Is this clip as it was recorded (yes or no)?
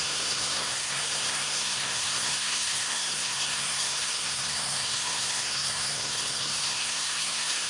no